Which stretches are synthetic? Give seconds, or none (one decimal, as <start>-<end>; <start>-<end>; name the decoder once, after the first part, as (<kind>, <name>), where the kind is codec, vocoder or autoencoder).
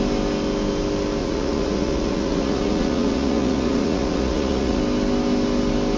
1.2-4.8 (vocoder, Vocos)